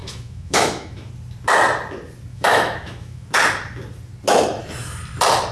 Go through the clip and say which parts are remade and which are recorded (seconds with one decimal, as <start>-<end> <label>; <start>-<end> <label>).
0.0-1.1 remade; 1.1-2.3 recorded; 2.3-3.3 remade; 3.3-5.5 recorded